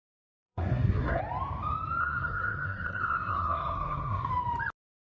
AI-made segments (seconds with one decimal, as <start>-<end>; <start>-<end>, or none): 0.0-1.2; 2.0-4.3